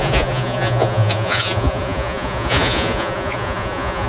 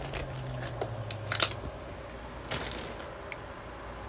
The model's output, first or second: first